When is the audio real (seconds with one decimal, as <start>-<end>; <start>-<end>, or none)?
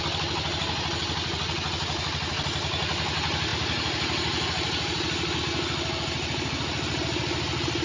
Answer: 0.0-7.8